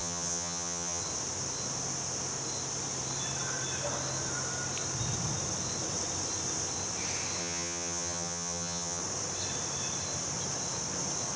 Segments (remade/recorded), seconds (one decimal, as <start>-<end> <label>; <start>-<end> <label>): 0.0-1.0 remade; 1.0-7.4 recorded; 7.4-9.0 remade; 9.0-11.4 recorded